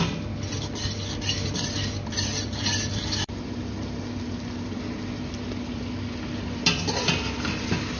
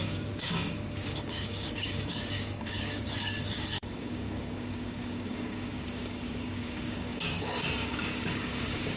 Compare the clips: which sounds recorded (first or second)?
first